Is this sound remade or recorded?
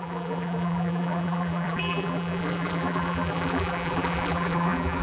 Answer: remade